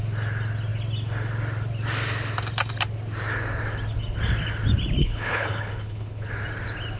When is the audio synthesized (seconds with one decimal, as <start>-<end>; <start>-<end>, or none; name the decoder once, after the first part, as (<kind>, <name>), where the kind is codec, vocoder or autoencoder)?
5.0-6.3 (codec, HILCodec)